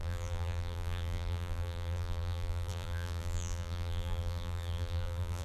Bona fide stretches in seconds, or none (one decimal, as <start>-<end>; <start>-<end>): none